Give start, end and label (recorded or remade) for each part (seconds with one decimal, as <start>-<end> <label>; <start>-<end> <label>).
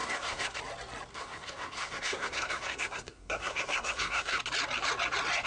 0.0-0.6 remade; 0.6-1.1 recorded; 1.1-4.4 remade; 4.4-5.5 recorded